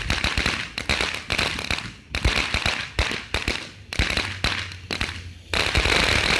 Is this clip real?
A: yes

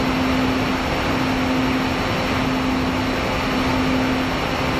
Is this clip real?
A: yes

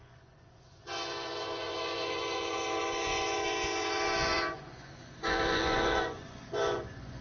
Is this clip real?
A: no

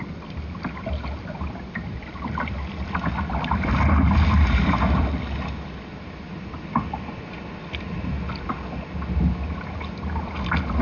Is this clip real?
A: yes